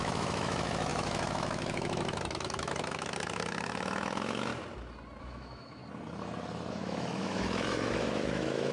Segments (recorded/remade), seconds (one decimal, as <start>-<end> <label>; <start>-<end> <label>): 0.0-4.5 remade; 4.5-5.2 recorded; 5.2-5.8 remade; 5.8-6.7 recorded; 6.7-8.7 remade